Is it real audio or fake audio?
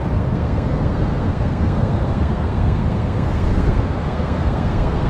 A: fake